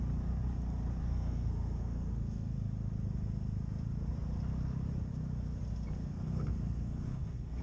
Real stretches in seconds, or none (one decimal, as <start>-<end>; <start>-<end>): 0.0-1.0; 2.5-6.0